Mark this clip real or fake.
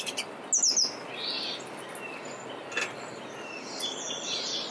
real